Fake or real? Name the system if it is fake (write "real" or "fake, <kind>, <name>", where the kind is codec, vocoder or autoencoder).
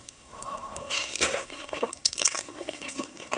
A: fake, codec, SNAC